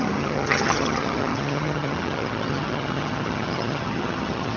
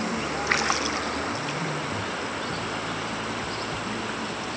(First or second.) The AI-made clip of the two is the first